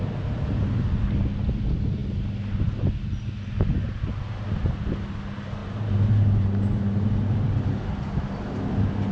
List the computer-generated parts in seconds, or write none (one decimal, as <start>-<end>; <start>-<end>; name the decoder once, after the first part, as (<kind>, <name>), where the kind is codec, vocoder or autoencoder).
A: 5.6-6.8 (vocoder, BigVGAN v2)